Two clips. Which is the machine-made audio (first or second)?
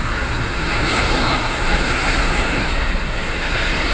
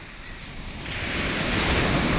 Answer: first